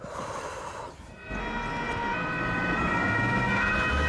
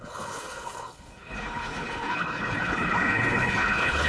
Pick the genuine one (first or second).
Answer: first